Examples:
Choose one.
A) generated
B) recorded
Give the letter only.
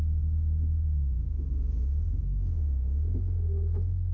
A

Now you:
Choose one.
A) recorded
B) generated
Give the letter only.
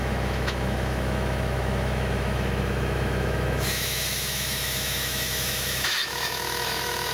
B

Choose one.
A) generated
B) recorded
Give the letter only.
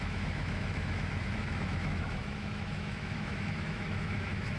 A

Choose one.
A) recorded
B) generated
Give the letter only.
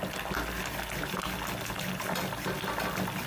A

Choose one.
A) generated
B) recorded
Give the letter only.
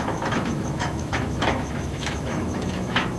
A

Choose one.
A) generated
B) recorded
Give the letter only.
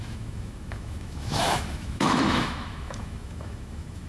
A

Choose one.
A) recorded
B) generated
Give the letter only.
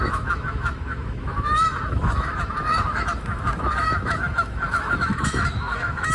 B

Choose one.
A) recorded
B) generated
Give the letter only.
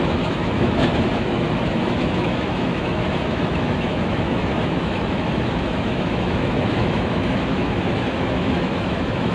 B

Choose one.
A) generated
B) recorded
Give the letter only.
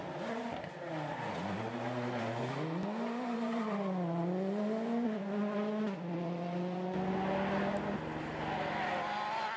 B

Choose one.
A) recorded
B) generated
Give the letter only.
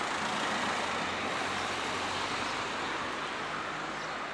A